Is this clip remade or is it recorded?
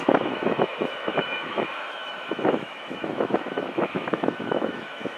remade